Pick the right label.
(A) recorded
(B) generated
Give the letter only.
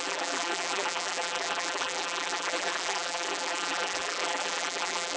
B